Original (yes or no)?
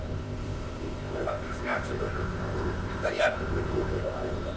no